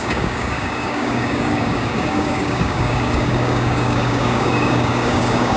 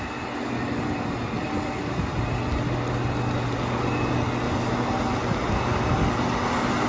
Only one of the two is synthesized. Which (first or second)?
first